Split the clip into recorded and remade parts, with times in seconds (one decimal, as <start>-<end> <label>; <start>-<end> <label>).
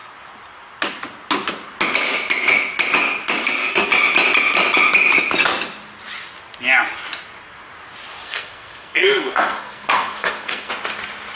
0.0-3.4 recorded; 3.4-3.9 remade; 3.9-8.2 recorded; 8.2-10.7 remade; 10.7-11.4 recorded